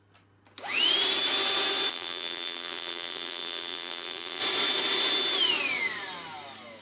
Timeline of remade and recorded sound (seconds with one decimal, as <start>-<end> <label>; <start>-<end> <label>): 0.0-1.9 recorded; 1.9-4.4 remade; 4.4-6.8 recorded